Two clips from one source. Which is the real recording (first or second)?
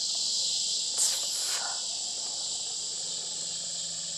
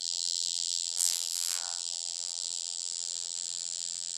first